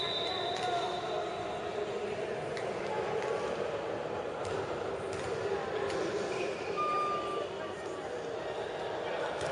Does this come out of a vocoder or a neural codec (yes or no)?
no